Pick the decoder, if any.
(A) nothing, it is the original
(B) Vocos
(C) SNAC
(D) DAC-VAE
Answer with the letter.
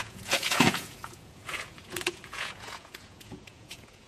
B